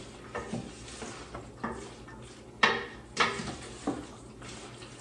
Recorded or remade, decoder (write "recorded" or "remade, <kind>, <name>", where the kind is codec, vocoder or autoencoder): recorded